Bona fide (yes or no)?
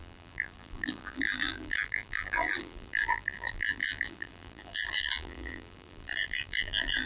no